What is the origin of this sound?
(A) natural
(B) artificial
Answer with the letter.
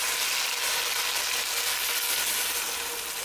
A